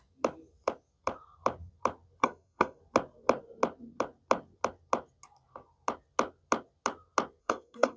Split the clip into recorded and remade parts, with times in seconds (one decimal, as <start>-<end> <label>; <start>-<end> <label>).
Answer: 0.0-2.2 recorded; 2.2-2.8 remade; 2.8-7.4 recorded; 7.4-8.0 remade

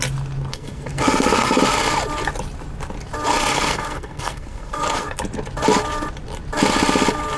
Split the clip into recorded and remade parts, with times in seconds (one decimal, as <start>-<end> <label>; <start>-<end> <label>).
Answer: 0.0-0.5 recorded; 0.5-1.6 remade; 1.6-3.5 recorded; 3.5-5.2 remade; 5.2-7.4 recorded

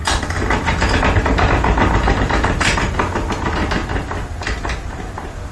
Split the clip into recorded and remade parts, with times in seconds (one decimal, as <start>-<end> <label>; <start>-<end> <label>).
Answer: 0.0-5.5 recorded

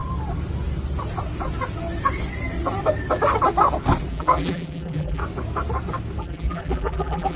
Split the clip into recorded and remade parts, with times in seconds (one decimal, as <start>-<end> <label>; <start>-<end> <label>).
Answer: 0.0-4.1 recorded; 4.1-5.2 remade; 5.2-6.2 recorded; 6.2-7.4 remade

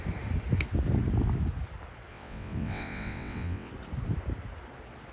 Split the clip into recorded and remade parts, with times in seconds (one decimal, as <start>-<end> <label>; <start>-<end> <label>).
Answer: 0.0-2.1 recorded; 2.1-3.7 remade; 3.7-5.1 recorded